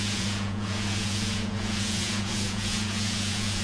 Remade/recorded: remade